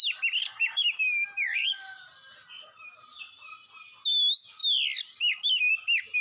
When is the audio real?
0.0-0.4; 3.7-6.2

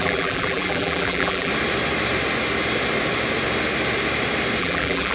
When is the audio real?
1.5-4.6

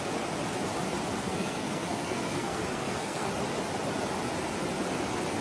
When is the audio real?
0.0-1.2; 3.3-5.4